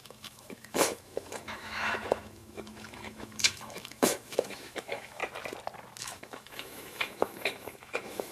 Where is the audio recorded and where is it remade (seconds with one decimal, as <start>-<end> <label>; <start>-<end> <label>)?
0.0-5.2 remade; 5.2-6.0 recorded; 6.0-8.3 remade